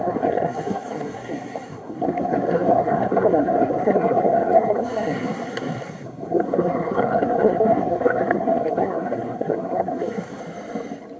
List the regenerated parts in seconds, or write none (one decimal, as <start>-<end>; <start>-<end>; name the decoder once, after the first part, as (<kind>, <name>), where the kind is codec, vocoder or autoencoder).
0.0-10.4 (codec, SNAC)